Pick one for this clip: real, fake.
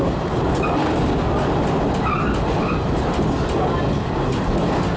real